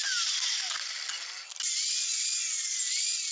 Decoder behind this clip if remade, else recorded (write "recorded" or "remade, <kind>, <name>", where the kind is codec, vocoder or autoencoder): recorded